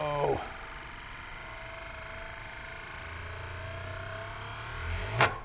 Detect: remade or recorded recorded